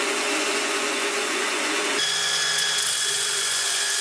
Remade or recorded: remade